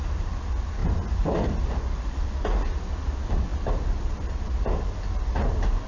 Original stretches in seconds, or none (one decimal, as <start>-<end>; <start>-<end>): 0.0-5.9